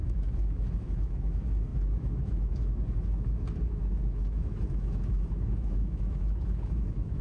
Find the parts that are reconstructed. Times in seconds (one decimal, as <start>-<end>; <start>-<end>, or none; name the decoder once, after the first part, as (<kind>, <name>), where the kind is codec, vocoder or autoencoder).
0.0-7.2 (autoencoder, DAC-VAE)